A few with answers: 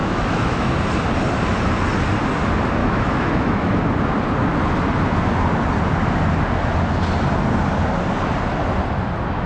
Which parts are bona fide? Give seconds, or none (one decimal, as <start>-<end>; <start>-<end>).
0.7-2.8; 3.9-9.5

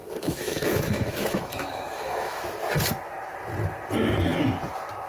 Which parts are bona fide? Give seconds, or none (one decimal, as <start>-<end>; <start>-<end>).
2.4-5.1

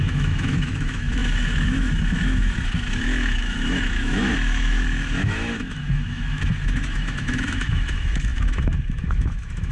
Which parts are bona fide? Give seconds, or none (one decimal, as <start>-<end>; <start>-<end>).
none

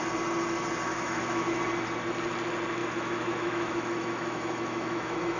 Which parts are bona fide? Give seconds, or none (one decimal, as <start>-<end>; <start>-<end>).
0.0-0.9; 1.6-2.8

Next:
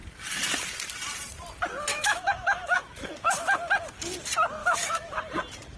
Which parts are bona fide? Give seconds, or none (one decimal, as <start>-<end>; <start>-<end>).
0.0-1.9; 3.4-4.6; 5.2-5.8

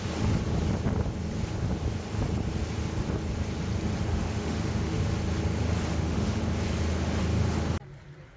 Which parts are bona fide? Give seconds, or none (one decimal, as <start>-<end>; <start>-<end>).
0.0-4.1; 5.0-5.9; 6.4-8.4